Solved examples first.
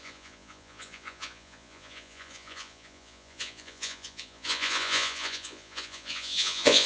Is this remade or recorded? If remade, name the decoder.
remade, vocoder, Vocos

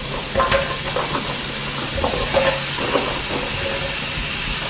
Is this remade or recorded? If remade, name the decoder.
recorded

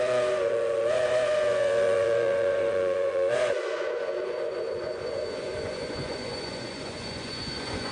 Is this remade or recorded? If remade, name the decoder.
remade, vocoder, Vocos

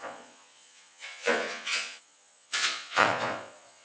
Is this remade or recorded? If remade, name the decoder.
remade, vocoder, Vocos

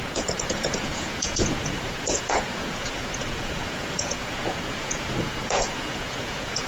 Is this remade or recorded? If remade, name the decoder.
remade, vocoder, Vocos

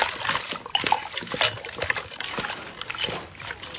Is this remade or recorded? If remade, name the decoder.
recorded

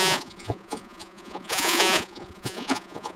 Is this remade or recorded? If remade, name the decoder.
remade, vocoder, Vocos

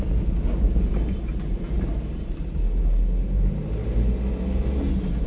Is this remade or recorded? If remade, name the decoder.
recorded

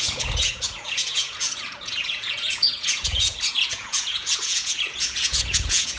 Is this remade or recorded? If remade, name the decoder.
remade, vocoder, Vocos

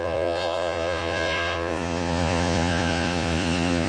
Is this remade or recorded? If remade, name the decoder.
remade, vocoder, Vocos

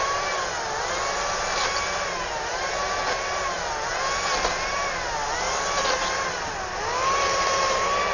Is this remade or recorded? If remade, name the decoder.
recorded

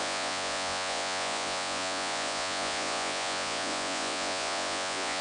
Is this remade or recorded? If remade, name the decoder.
remade, vocoder, Vocos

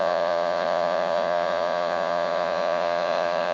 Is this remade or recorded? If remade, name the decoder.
remade, vocoder, Vocos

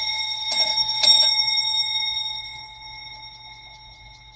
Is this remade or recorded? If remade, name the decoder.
remade, vocoder, Vocos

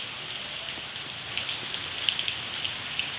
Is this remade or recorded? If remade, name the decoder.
recorded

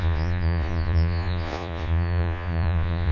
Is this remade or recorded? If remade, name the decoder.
remade, vocoder, Vocos